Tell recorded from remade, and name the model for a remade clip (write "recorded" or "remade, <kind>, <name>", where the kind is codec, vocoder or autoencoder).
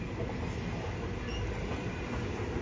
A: recorded